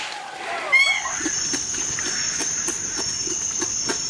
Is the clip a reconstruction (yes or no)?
no